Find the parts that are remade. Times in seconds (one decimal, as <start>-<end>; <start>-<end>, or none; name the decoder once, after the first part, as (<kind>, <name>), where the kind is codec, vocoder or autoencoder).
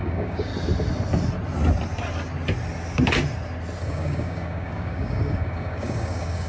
0.0-0.5 (codec, DAC); 3.8-6.5